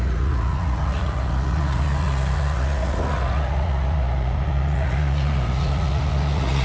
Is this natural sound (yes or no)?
no